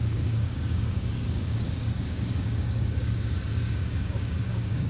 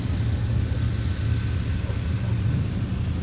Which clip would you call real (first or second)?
second